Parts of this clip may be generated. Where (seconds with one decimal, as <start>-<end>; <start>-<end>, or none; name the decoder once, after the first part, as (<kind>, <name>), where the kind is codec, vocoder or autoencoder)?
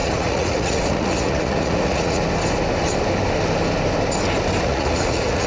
0.0-2.2 (vocoder, Vocos); 4.6-5.5